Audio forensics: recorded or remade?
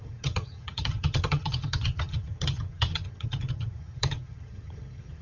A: remade